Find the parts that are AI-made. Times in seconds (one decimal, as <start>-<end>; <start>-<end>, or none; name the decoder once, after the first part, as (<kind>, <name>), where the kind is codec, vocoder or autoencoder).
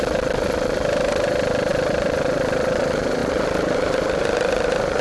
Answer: 3.2-5.0 (vocoder, BigVGAN v2)